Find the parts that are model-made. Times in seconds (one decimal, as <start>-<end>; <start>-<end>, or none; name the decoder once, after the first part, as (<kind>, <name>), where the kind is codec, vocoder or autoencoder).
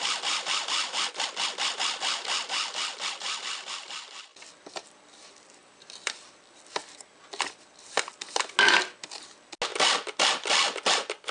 none